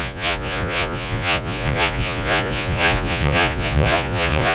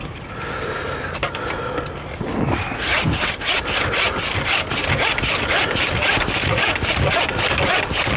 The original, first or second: second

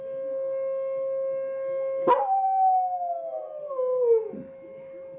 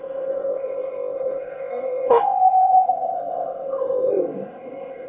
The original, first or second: first